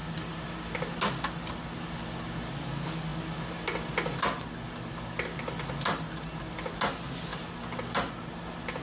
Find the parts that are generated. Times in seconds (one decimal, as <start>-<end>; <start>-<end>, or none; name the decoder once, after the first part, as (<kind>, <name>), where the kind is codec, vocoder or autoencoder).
none

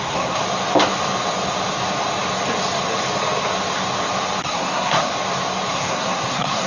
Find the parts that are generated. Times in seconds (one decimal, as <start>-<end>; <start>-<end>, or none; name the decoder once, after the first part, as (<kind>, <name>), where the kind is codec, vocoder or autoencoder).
0.0-0.4 (codec, SNAC); 4.4-5.1; 5.7-6.7

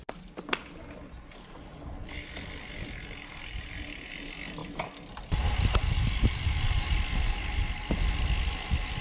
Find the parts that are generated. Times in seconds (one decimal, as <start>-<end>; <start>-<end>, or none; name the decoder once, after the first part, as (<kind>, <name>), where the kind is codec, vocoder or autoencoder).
none

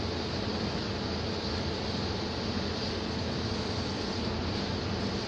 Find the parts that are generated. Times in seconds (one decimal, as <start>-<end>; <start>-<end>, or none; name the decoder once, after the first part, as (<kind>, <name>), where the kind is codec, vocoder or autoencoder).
none

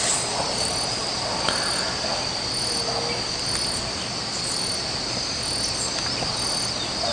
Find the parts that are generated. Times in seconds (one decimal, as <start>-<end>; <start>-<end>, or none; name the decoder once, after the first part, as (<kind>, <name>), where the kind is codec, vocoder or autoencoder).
none

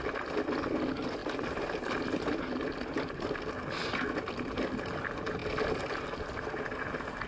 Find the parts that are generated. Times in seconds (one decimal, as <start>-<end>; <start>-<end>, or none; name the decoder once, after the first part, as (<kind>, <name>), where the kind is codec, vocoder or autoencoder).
none

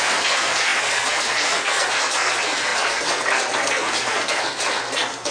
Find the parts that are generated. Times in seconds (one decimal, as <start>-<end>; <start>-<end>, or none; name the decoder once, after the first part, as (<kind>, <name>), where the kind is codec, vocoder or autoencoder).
0.0-5.3 (codec, SNAC)